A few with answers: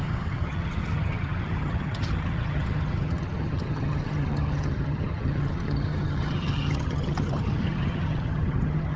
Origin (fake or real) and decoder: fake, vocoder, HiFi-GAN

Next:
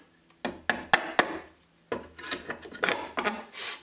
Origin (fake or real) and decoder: real